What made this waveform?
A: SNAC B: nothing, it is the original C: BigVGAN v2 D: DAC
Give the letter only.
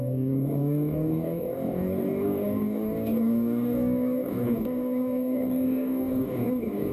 D